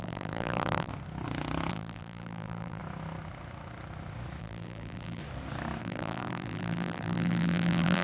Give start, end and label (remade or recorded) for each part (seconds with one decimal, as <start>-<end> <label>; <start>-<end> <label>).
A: 0.0-0.9 remade; 0.9-1.7 recorded; 1.7-2.8 remade; 2.8-4.4 recorded; 4.4-5.2 remade; 5.2-5.8 recorded; 5.8-8.0 remade